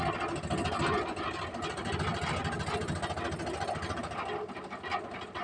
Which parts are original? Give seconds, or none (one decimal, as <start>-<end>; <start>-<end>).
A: 0.0-5.4